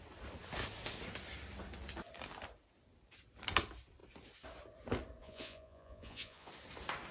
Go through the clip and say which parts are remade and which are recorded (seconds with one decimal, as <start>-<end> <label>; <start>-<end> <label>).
0.0-5.2 recorded; 5.2-6.5 remade; 6.5-7.1 recorded